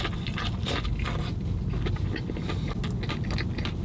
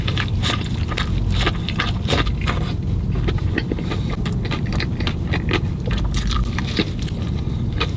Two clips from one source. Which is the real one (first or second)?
first